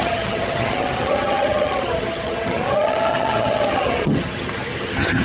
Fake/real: fake